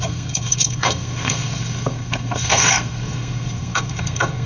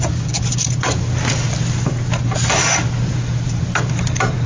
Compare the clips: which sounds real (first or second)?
second